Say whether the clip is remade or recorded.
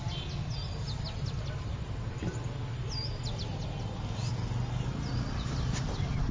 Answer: recorded